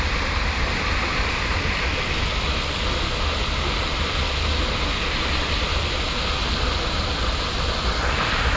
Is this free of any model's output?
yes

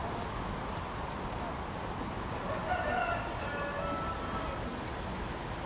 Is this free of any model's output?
yes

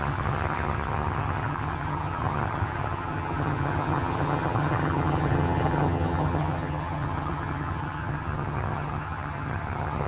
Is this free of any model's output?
no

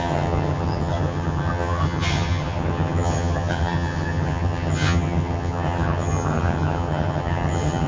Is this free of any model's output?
no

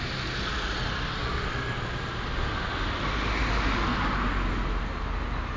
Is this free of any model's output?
yes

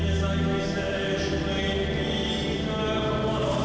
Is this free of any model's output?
yes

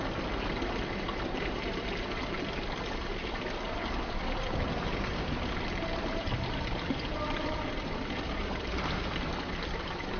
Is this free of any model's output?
yes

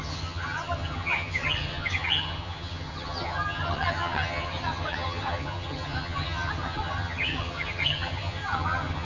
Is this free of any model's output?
no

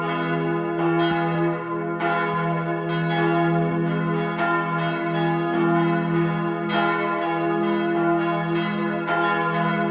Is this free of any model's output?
yes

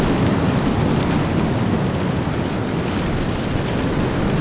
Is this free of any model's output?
yes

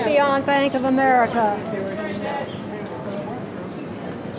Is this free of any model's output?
yes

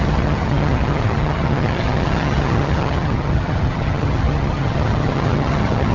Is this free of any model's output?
no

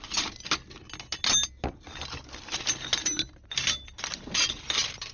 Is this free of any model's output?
yes